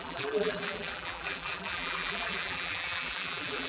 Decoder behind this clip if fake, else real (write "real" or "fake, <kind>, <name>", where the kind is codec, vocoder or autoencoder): fake, vocoder, BigVGAN v2